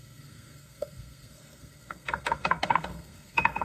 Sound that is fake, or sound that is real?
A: fake